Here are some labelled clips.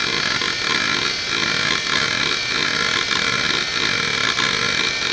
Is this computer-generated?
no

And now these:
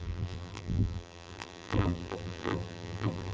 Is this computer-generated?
yes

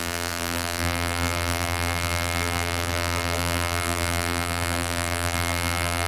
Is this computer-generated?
yes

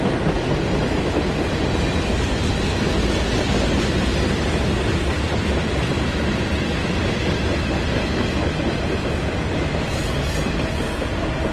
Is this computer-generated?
no